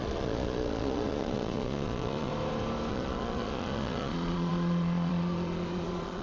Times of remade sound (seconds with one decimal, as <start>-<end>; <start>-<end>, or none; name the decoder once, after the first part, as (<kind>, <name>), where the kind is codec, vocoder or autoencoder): 0.0-2.3 (vocoder, Vocos); 2.9-6.2